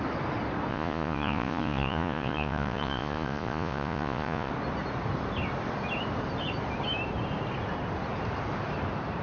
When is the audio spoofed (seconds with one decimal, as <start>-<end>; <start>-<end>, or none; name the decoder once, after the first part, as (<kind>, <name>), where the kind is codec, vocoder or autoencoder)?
0.7-4.5 (vocoder, Vocos)